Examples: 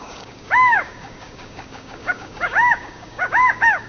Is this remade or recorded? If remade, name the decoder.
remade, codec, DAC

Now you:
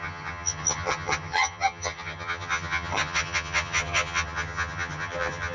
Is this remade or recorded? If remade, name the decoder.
remade, vocoder, HiFi-GAN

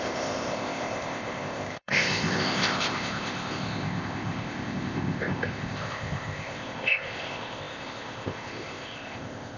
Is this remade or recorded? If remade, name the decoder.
remade, codec, ZipCodec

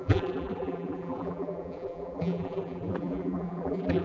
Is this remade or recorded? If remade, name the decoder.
remade, vocoder, BigVGAN v2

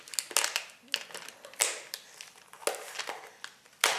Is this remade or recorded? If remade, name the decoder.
recorded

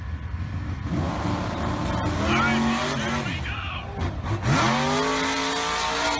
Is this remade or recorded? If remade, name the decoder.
recorded